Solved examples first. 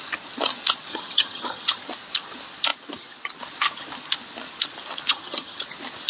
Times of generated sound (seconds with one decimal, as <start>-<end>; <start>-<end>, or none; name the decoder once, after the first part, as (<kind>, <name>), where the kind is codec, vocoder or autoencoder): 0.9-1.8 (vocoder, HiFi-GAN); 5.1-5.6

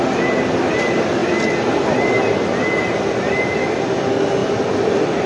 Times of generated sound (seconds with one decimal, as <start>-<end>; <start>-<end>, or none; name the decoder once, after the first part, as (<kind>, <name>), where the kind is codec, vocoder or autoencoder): 4.4-5.3 (vocoder, BigVGAN v2)

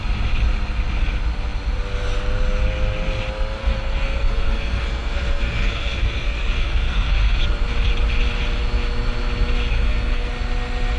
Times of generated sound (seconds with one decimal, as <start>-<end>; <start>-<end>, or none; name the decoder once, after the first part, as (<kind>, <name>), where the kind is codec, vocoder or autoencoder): 3.6-7.4 (codec, SNAC); 9.7-10.3

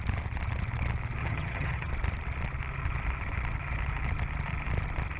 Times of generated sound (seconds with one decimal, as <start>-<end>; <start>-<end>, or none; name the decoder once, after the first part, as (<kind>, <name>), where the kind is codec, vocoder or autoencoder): 1.2-1.9 (vocoder, HiFi-GAN)